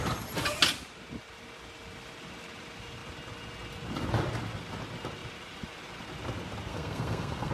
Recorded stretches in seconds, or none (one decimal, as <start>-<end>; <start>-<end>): 0.0-6.7